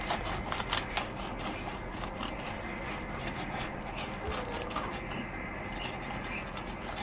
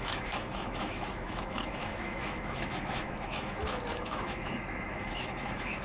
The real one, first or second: first